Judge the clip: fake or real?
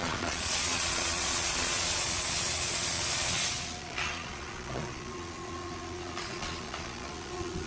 fake